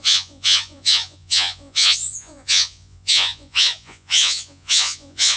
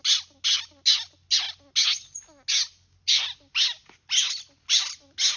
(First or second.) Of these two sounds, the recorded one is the second